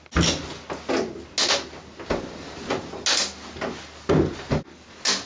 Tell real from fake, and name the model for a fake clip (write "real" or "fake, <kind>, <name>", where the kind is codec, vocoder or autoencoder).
real